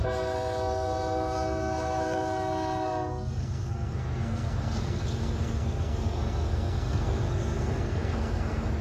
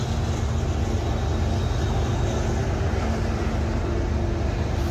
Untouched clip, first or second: second